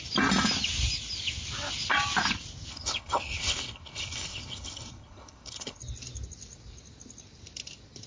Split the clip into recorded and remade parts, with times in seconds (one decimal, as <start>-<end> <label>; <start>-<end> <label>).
0.0-2.7 recorded; 2.7-5.8 remade; 5.8-8.1 recorded